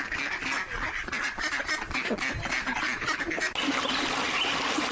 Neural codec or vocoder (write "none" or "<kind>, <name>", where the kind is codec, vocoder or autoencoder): none